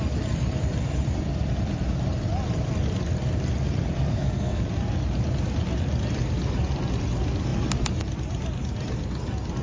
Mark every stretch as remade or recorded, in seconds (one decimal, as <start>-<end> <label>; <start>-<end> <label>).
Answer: 0.0-4.1 recorded; 4.1-4.6 remade; 4.6-9.6 recorded